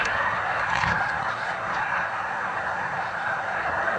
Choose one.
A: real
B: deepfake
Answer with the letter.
B